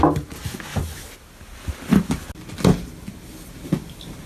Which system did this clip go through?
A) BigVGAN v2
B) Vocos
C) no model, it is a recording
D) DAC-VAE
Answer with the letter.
C